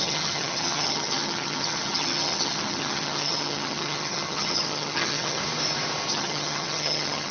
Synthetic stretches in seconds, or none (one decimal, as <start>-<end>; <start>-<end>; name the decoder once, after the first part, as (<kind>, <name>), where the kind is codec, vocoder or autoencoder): 0.0-5.4 (vocoder, HiFi-GAN); 6.1-7.3